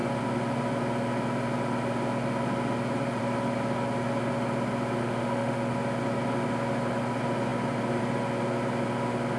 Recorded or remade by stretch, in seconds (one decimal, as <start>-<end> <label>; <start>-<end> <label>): 0.0-5.0 recorded; 5.0-5.7 remade; 5.7-9.4 recorded